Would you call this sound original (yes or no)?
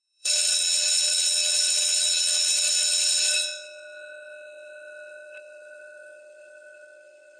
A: no